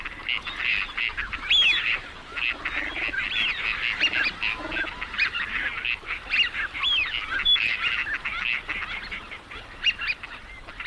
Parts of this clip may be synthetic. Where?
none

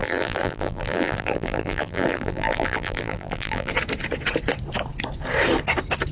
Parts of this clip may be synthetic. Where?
0.0-3.7 (vocoder, BigVGAN v2)

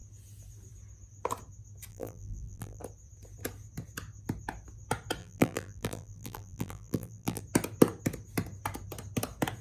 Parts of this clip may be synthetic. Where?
1.9-2.8 (vocoder, BigVGAN v2); 5.2-7.4

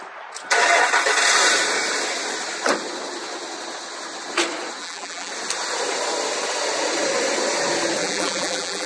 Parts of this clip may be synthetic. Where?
4.8-5.3 (vocoder, BigVGAN v2); 8.0-8.9

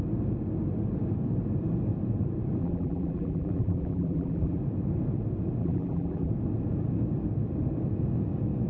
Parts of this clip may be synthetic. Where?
2.6-4.6 (vocoder, BigVGAN v2); 5.6-6.3

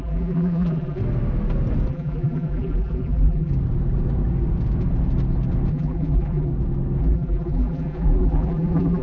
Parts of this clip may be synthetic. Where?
0.0-1.0 (vocoder, BigVGAN v2); 1.9-3.5; 5.7-6.5; 7.0-9.0

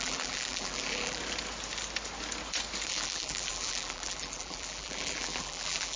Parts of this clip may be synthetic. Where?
0.0-1.2 (vocoder, BigVGAN v2); 2.9-6.0